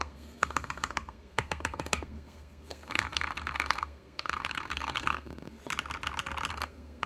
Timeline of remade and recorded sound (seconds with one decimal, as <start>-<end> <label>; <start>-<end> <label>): 0.0-5.6 remade; 5.6-6.5 recorded; 6.5-7.1 remade